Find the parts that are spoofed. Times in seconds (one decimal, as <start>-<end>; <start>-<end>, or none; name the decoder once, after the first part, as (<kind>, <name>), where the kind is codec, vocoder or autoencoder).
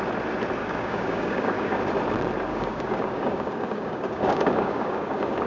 0.6-1.8 (codec, DAC); 2.5-5.5